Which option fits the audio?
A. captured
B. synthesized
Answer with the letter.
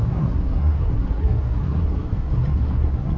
B